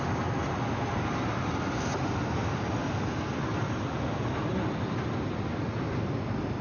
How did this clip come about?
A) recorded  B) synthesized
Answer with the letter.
A